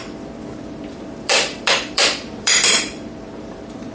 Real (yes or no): no